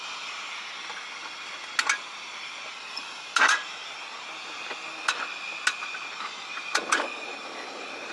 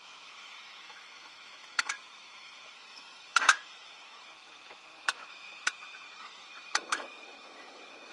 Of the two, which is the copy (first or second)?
second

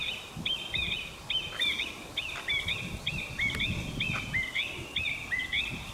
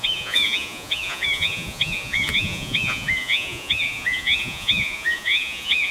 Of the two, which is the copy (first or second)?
second